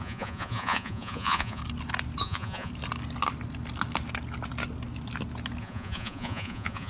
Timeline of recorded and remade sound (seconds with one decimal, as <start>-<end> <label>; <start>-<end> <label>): 0.0-1.6 remade; 1.6-2.2 recorded; 2.2-2.7 remade; 2.7-5.6 recorded; 5.6-6.9 remade